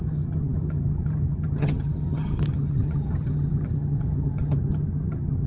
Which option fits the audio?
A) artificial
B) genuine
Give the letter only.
A